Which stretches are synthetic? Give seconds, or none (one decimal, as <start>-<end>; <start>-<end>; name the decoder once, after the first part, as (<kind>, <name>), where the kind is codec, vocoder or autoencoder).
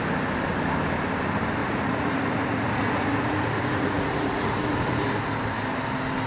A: 1.6-5.0 (vocoder, Vocos)